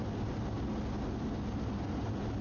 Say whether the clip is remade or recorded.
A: recorded